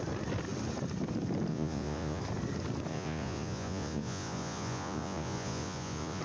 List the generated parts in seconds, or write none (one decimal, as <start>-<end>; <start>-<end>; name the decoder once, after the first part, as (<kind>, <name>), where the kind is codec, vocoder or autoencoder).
1.5-2.2 (vocoder, Vocos); 2.9-6.2